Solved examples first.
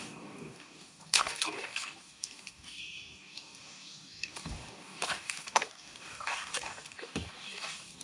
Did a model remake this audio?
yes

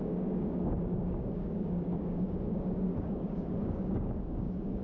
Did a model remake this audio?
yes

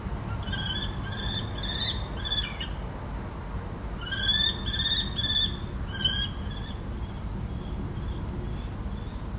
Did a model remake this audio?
no